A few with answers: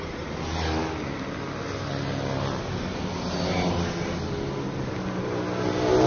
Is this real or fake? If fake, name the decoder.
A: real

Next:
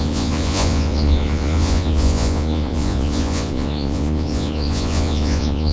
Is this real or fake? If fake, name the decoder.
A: fake, vocoder, Vocos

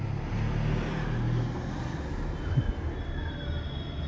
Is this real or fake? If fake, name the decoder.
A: real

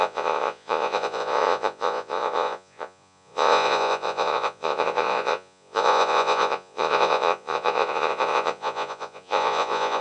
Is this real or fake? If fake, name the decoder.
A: fake, vocoder, Vocos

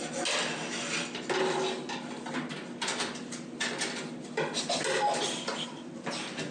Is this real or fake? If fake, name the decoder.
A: real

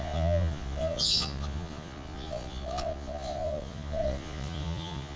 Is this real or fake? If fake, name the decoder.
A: fake, vocoder, Vocos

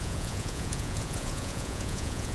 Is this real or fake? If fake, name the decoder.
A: fake, vocoder, Vocos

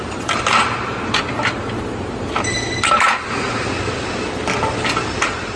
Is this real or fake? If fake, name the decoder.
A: real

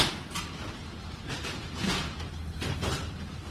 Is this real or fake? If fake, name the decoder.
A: real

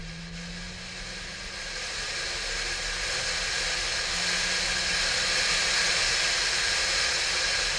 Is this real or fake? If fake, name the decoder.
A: real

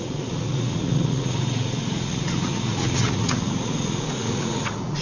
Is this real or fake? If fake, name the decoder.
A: fake, vocoder, Vocos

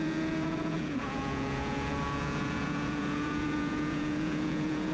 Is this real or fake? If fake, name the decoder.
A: fake, vocoder, Vocos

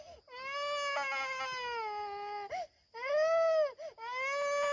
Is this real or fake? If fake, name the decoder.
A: real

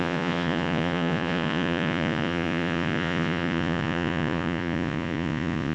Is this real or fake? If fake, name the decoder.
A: fake, vocoder, Vocos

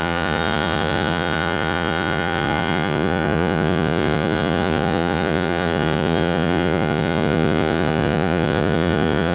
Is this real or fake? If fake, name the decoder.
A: fake, vocoder, Vocos